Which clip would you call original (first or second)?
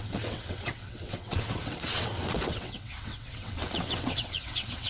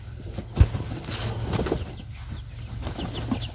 second